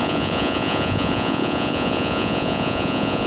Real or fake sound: fake